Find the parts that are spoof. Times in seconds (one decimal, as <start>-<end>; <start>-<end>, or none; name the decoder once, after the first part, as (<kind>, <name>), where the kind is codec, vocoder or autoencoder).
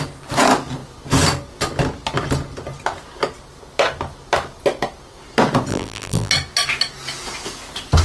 5.7-6.3 (vocoder, BigVGAN v2)